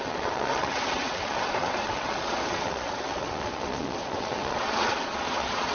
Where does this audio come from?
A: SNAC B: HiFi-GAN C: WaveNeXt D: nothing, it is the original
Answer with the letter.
C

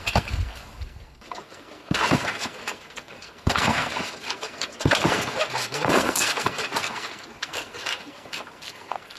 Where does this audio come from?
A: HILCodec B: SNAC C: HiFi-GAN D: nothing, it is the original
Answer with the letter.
B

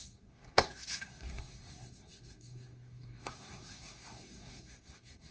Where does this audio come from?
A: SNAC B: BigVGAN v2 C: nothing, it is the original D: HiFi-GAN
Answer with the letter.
A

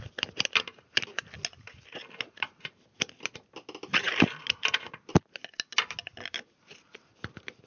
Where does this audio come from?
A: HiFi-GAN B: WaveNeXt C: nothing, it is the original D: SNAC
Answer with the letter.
C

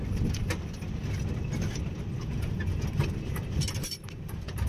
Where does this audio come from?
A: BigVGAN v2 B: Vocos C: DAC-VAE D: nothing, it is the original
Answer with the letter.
D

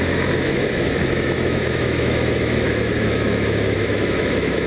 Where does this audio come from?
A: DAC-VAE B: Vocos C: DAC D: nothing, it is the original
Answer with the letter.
A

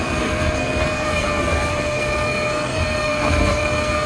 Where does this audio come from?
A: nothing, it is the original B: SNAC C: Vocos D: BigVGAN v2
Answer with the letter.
B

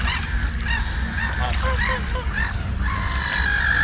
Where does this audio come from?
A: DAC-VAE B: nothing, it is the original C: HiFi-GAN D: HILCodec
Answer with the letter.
B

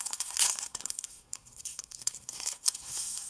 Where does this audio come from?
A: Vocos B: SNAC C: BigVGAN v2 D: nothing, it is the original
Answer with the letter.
B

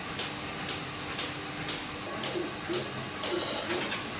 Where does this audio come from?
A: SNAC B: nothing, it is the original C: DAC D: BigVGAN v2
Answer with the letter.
B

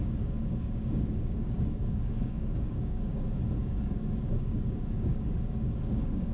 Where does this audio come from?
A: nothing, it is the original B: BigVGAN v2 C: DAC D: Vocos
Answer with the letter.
C